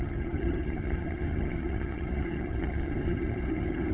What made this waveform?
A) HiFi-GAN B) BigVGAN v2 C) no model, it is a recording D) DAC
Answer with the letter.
A